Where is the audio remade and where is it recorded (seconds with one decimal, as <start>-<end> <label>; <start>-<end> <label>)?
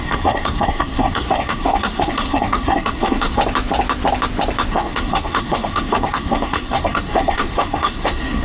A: 0.0-3.4 remade; 3.4-4.7 recorded; 4.7-8.4 remade